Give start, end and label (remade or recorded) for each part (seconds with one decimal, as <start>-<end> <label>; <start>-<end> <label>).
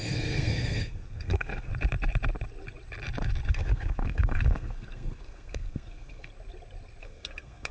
0.0-1.7 remade; 1.7-3.5 recorded; 3.5-6.3 remade; 6.3-7.0 recorded; 7.0-7.7 remade